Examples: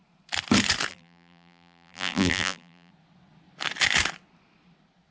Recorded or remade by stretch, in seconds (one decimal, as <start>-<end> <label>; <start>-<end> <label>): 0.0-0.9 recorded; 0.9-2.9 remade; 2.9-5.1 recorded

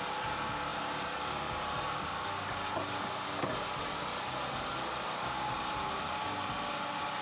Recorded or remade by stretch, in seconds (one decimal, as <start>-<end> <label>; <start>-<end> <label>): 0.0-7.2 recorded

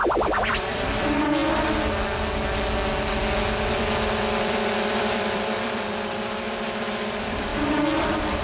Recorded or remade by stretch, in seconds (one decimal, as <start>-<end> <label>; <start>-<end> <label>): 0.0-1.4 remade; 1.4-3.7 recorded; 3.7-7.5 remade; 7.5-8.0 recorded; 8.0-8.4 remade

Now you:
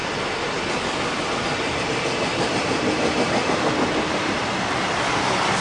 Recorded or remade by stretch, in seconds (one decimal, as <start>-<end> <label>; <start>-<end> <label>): 0.0-2.3 recorded; 2.3-3.6 remade; 3.6-5.6 recorded